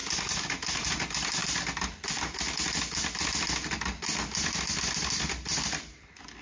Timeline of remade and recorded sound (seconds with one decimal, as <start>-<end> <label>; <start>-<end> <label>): 0.0-1.4 remade; 1.4-4.3 recorded; 4.3-6.4 remade